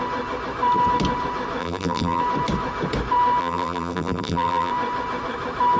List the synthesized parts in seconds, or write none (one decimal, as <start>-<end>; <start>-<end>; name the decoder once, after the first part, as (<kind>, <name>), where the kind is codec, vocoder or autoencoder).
1.6-2.2 (vocoder, BigVGAN v2); 3.4-4.7